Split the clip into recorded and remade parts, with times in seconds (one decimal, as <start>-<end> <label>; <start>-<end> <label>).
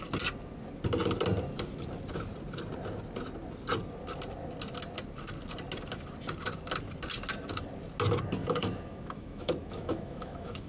0.0-8.4 recorded; 8.4-10.7 remade